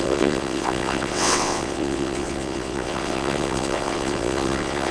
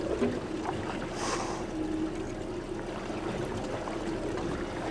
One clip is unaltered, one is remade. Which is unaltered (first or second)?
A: second